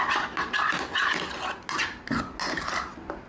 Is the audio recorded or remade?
recorded